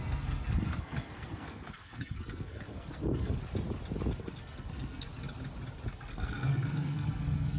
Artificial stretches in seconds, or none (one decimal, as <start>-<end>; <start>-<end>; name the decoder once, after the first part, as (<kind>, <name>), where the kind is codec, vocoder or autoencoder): 0.0-3.4 (codec, SNAC); 4.2-5.1; 5.9-7.6